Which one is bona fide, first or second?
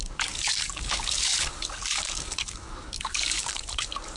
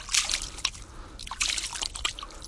second